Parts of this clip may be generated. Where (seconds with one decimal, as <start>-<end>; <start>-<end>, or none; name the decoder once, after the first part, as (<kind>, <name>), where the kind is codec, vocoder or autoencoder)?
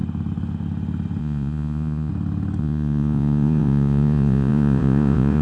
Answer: 1.2-2.1 (vocoder, Vocos); 2.6-5.4